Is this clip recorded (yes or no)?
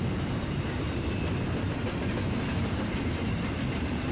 yes